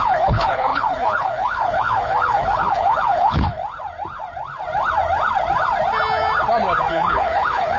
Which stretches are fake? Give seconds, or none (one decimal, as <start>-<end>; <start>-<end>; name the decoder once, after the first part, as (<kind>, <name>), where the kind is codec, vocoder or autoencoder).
0.0-3.6 (codec, HILCodec); 6.9-7.8